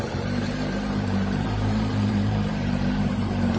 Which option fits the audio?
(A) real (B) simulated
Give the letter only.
B